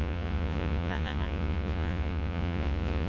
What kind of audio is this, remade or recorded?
remade